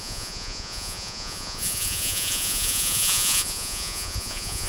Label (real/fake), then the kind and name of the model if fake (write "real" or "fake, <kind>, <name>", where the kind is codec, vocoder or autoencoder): fake, vocoder, Vocos